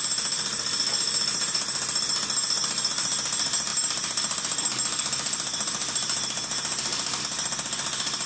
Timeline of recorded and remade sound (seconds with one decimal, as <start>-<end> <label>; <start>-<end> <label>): 0.0-8.3 recorded